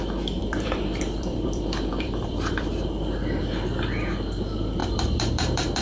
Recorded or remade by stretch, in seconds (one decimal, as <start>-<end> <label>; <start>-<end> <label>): 0.0-0.4 recorded; 0.4-3.4 remade; 3.4-4.8 recorded; 4.8-5.8 remade